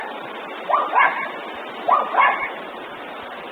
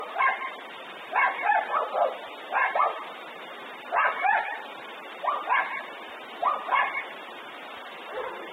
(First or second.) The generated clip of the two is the second